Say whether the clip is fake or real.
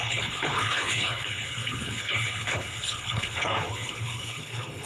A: fake